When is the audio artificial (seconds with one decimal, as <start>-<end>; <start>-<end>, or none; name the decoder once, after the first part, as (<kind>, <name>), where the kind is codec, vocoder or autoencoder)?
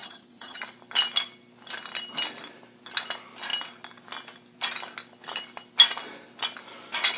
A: 0.0-0.6 (vocoder, HiFi-GAN)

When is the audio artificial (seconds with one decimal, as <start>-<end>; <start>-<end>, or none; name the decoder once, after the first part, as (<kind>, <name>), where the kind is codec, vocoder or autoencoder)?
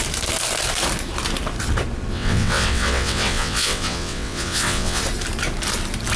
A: 2.1-5.0 (vocoder, WaveNeXt)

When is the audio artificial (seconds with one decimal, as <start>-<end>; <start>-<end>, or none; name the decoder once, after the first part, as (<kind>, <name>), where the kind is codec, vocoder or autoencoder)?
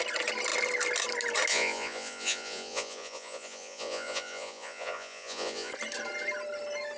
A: 1.5-5.7 (vocoder, Vocos)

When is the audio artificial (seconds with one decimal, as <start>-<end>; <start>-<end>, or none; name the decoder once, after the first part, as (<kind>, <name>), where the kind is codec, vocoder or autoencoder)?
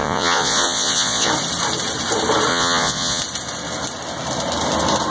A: 0.0-1.3 (vocoder, Vocos); 2.5-3.2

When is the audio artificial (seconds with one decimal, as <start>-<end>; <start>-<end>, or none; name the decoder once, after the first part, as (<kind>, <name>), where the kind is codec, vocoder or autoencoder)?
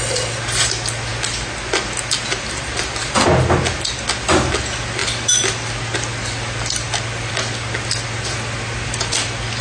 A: none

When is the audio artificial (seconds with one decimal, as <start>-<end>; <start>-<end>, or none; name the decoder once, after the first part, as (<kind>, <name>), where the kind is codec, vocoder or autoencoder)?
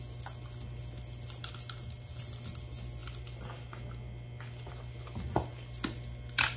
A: none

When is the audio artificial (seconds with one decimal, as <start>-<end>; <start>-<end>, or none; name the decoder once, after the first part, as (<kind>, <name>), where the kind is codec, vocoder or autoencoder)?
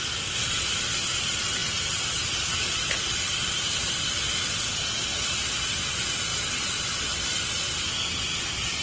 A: none